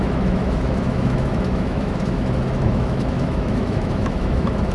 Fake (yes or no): yes